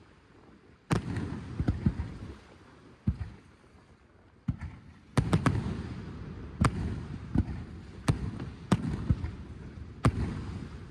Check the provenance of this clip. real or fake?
real